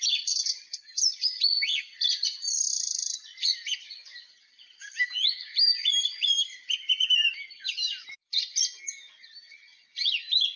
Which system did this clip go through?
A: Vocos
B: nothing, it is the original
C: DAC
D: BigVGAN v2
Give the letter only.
B